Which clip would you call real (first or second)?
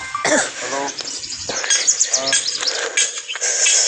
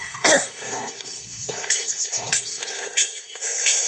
first